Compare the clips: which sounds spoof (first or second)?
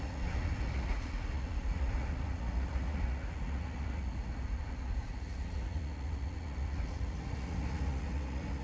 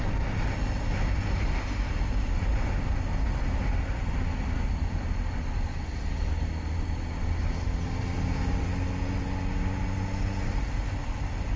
first